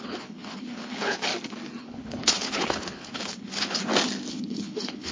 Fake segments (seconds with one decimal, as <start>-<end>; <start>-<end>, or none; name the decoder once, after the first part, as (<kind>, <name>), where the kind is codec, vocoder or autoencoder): 0.0-1.3 (codec, HILCodec); 1.8-3.8; 4.3-5.1